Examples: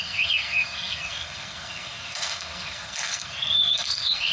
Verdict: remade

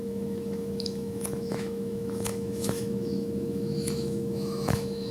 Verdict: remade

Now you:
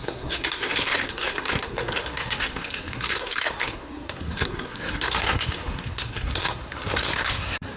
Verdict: remade